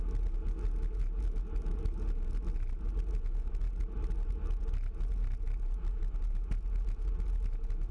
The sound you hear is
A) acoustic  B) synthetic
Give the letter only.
A